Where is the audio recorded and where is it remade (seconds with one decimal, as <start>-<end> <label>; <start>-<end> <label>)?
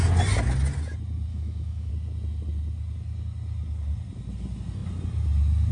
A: 0.0-1.3 recorded; 1.3-1.9 remade; 1.9-5.7 recorded